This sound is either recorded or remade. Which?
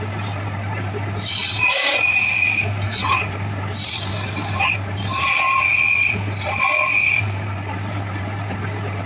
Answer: recorded